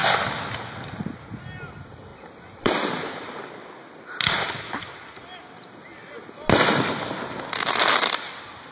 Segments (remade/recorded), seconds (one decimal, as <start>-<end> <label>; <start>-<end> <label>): 0.0-1.7 recorded; 1.7-2.1 remade; 2.1-6.9 recorded; 6.9-8.7 remade